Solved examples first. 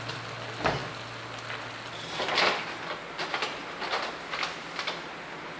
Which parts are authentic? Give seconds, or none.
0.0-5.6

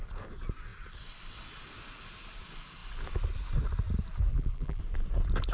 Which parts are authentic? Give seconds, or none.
0.0-4.3; 4.8-5.5

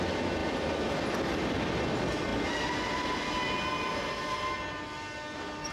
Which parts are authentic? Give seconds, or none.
0.0-0.4; 0.9-5.7

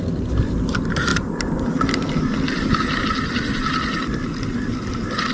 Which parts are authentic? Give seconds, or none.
0.0-1.1; 3.0-5.3

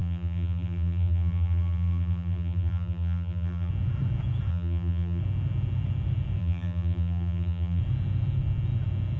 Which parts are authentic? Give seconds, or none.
3.7-4.5; 5.2-6.4; 7.8-9.2

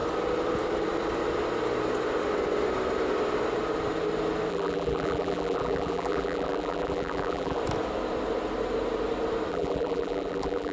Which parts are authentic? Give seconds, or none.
0.0-4.5; 7.6-9.5